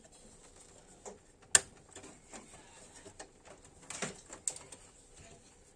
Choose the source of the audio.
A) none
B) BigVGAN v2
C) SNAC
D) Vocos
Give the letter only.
A